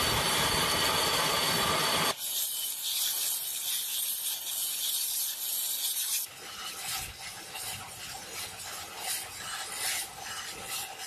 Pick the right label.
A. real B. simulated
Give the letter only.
A